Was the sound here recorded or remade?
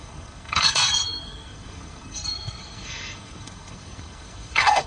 remade